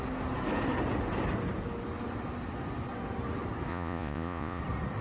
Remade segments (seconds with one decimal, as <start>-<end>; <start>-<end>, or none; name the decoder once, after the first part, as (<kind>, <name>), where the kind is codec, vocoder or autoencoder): 3.7-4.6 (vocoder, Vocos)